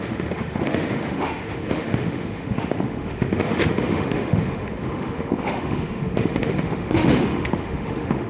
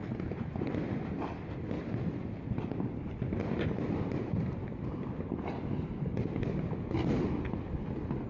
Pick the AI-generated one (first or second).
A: first